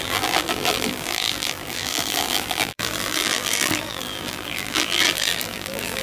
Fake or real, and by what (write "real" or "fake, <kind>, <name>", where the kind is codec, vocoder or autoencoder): fake, vocoder, BigVGAN v2